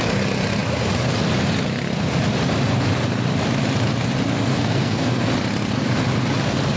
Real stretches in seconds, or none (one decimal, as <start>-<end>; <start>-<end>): 0.0-4.5; 5.3-6.8